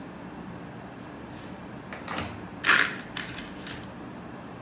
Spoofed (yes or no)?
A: no